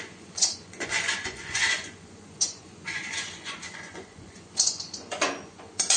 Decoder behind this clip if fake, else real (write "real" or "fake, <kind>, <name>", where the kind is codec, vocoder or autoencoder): fake, vocoder, Vocos